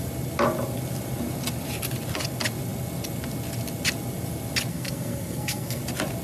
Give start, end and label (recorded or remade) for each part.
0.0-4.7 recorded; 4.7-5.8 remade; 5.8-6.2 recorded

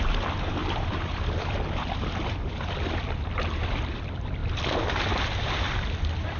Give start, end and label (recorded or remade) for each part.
0.0-6.4 recorded

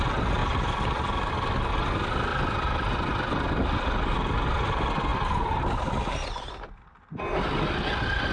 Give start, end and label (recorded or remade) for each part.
0.0-8.3 recorded